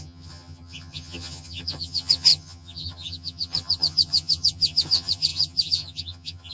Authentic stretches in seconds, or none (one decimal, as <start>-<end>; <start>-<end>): none